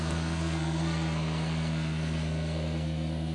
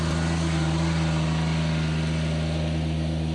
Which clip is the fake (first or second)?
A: first